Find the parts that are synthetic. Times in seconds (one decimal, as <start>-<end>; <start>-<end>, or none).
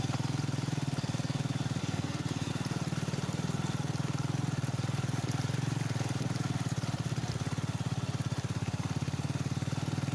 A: 1.8-2.5